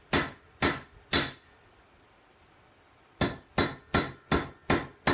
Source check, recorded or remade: recorded